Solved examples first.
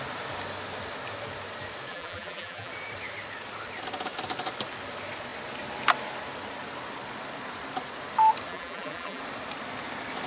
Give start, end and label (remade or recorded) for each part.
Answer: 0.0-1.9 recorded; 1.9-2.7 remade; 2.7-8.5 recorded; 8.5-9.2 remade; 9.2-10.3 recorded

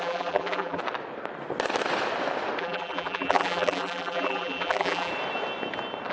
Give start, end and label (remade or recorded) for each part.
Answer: 0.0-0.8 remade; 0.8-2.6 recorded; 2.6-5.1 remade; 5.1-6.1 recorded

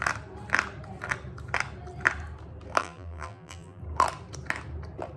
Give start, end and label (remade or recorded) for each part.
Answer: 0.0-2.8 recorded; 2.8-3.8 remade; 3.8-5.2 recorded